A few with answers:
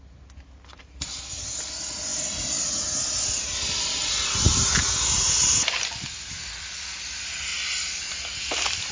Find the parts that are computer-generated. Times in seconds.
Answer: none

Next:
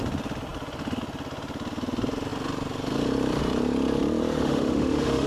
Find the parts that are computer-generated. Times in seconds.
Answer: 4.4-5.3 (autoencoder, DAC-VAE)

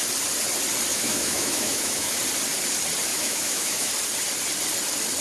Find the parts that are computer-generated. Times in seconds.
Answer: 0.9-2.2 (autoencoder, DAC-VAE); 3.1-3.9

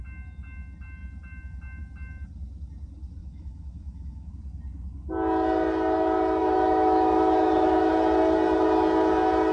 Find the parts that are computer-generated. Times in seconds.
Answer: 3.2-4.3 (autoencoder, DAC-VAE); 6.4-7.9

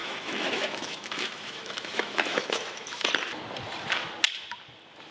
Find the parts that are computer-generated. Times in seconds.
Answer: 0.0-3.1 (autoencoder, DAC-VAE)

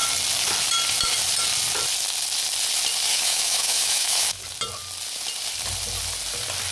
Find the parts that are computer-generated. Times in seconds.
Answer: 3.1-4.4 (autoencoder, DAC-VAE)

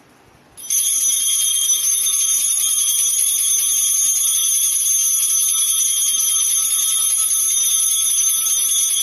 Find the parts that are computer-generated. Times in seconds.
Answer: 1.5-2.2 (autoencoder, DAC-VAE)

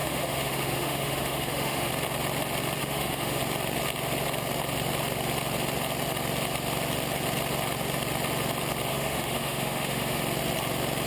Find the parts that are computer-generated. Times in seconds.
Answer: 0.0-1.9 (autoencoder, DAC-VAE); 2.8-3.4; 8.9-10.2